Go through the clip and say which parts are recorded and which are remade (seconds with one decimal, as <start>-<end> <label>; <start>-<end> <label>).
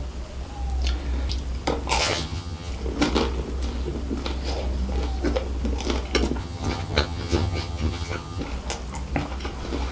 0.0-2.0 recorded; 2.0-2.7 remade; 2.7-6.4 recorded; 6.4-8.4 remade; 8.4-9.9 recorded